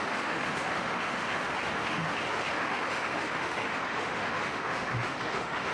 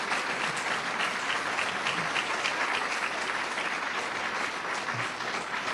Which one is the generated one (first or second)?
first